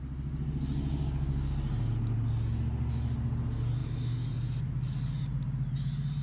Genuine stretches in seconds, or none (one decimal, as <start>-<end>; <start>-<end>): 0.0-6.2